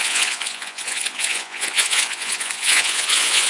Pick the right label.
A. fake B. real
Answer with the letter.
A